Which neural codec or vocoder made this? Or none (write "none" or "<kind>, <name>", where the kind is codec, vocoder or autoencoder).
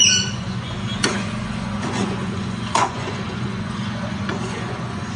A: vocoder, Vocos